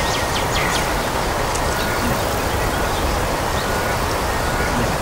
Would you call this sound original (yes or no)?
no